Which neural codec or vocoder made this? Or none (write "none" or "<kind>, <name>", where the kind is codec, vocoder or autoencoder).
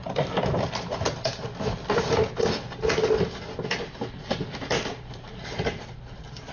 none